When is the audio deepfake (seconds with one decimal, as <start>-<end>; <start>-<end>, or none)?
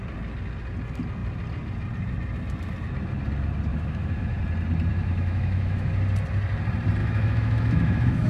3.7-4.4; 4.9-5.9; 7.0-8.3